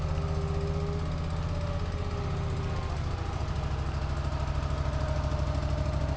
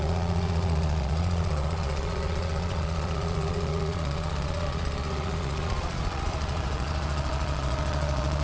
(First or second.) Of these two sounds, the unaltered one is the first